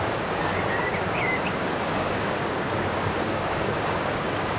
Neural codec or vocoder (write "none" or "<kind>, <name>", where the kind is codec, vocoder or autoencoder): codec, DAC